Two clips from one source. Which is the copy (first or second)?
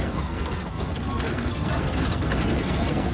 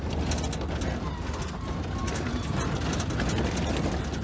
first